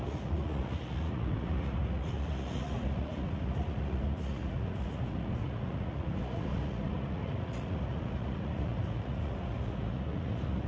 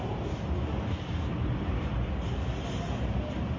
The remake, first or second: first